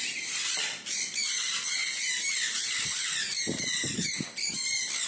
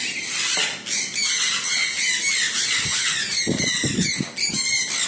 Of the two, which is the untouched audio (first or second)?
second